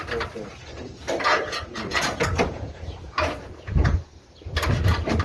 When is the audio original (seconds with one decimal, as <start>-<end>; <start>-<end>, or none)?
0.0-1.3; 4.1-5.2

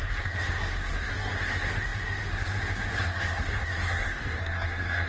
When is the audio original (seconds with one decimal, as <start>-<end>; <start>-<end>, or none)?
none

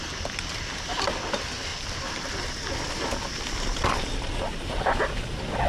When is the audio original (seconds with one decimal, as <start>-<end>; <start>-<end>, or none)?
0.0-1.7; 5.1-5.7

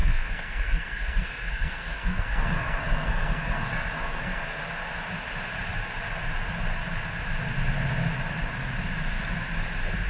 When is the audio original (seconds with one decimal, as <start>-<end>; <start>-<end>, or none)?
4.6-10.1

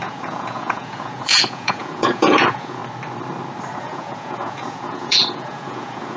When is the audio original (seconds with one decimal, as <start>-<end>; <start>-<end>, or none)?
2.8-3.8